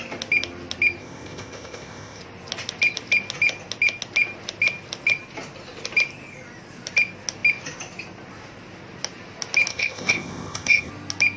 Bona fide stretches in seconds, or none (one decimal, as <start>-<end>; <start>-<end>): 0.0-1.0; 2.2-9.7; 10.9-11.4